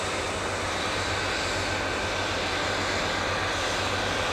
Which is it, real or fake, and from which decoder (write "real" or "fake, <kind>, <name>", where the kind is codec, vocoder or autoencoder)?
real